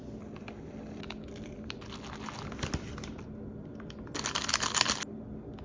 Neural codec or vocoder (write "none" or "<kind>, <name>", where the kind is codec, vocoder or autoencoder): none